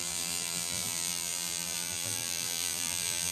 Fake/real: fake